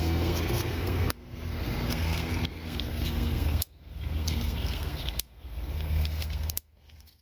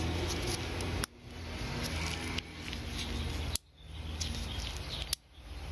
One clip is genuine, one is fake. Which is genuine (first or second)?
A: second